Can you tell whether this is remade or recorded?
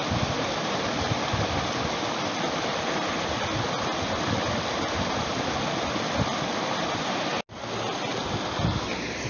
recorded